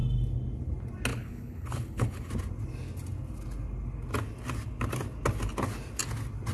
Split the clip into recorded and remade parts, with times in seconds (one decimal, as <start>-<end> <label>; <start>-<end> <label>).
0.0-1.1 recorded; 1.1-2.3 remade; 2.3-6.5 recorded

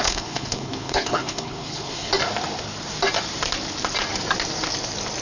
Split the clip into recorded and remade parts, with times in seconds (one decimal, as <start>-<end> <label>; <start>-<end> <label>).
0.0-2.1 remade; 2.1-5.2 recorded

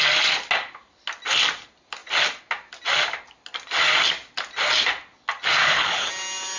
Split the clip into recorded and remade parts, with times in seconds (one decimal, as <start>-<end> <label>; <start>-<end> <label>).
0.0-5.6 recorded; 5.6-6.1 remade; 6.1-6.6 recorded

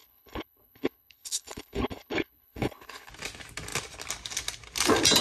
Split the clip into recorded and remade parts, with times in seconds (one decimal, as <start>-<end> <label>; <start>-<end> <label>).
0.0-3.1 remade; 3.1-5.2 recorded

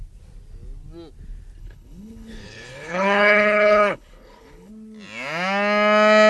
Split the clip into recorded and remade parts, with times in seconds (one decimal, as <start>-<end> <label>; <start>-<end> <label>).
0.0-1.6 recorded; 1.6-4.7 remade; 4.7-6.3 recorded

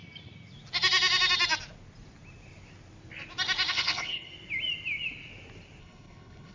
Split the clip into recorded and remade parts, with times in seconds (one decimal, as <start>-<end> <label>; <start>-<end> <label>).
0.0-3.7 recorded; 3.7-4.3 remade; 4.3-5.8 recorded; 5.8-6.5 remade

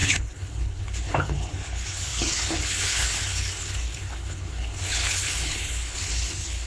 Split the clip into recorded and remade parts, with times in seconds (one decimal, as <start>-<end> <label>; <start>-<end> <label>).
0.0-6.7 remade

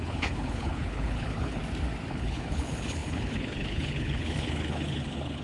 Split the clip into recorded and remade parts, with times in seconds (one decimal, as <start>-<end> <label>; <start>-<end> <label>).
0.0-1.6 remade; 1.6-2.1 recorded; 2.1-5.4 remade